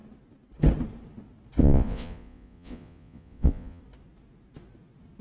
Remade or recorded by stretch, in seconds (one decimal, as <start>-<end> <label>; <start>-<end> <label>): 0.0-1.6 recorded; 1.6-3.8 remade; 3.8-5.2 recorded